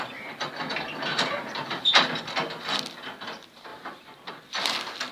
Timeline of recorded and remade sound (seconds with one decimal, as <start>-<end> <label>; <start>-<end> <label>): 0.0-1.1 recorded; 1.1-2.2 remade; 2.2-3.7 recorded; 3.7-4.3 remade; 4.3-5.1 recorded